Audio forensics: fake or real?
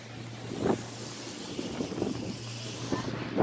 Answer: real